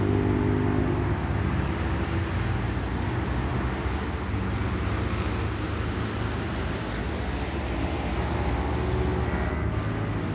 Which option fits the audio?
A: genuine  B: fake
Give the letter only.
A